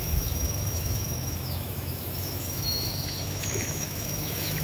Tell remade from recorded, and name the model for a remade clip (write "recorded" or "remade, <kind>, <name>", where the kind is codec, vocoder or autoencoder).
remade, autoencoder, DAC-VAE